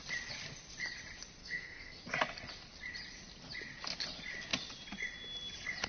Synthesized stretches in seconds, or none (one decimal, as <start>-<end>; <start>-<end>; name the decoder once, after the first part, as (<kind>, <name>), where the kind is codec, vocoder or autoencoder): 1.4-2.0 (codec, SNAC)